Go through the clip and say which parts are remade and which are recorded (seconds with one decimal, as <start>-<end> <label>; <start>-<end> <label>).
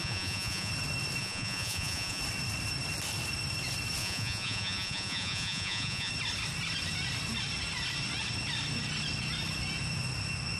0.0-0.7 remade; 0.7-1.2 recorded; 1.2-2.2 remade; 2.2-4.0 recorded; 4.0-6.1 remade; 6.1-10.6 recorded